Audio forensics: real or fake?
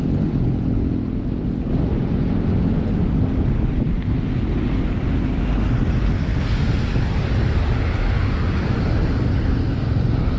real